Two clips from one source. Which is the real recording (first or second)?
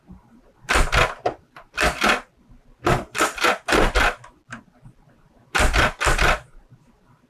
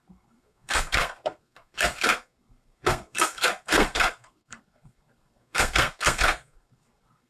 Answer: first